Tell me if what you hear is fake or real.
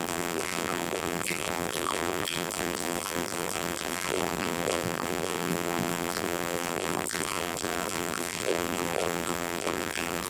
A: fake